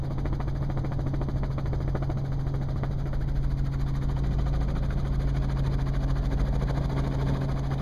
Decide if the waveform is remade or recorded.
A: recorded